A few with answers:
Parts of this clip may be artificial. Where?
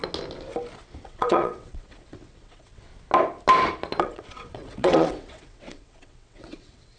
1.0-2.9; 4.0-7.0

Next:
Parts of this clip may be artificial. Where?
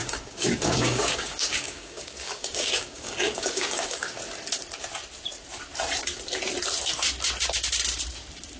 0.0-4.2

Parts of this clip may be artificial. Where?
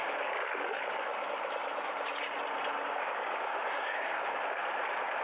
0.0-1.1; 3.0-4.6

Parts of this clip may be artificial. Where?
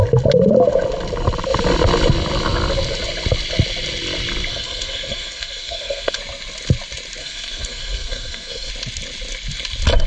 4.5-6.2; 7.2-8.7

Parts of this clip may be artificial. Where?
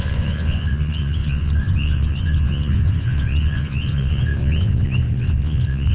0.0-5.9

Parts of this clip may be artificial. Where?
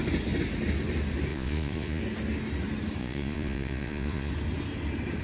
1.3-2.0; 3.0-4.3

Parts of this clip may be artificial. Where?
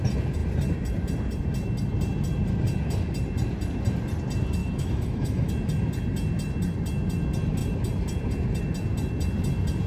4.6-5.5